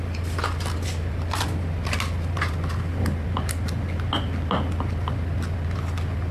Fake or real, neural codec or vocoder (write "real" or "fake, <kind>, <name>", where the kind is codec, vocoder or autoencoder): real